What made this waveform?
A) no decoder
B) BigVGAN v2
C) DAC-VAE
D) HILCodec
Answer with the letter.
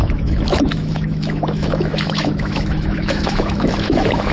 C